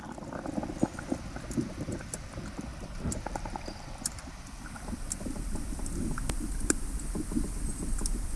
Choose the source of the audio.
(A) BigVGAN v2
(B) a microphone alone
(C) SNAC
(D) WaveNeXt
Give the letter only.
A